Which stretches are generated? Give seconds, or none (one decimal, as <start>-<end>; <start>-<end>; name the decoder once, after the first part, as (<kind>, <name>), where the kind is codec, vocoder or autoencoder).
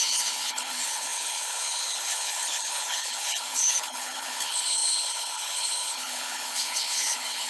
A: 0.0-7.5 (codec, HILCodec)